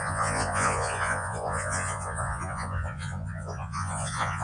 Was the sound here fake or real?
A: fake